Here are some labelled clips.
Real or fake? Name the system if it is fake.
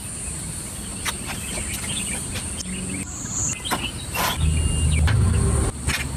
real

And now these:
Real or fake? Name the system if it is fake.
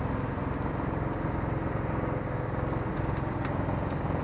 real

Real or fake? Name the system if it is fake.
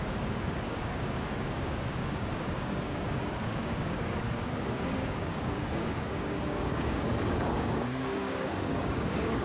fake, codec, DAC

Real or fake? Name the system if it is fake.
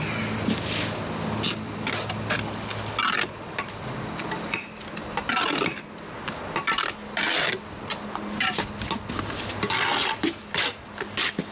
real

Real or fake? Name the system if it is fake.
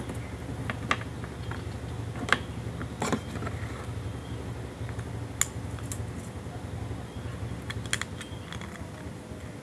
real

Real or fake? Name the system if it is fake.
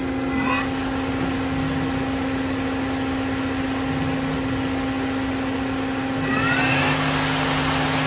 real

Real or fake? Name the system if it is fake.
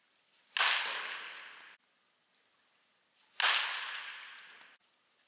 real